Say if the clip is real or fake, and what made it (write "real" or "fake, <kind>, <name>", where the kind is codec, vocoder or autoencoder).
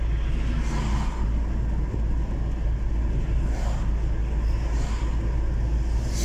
real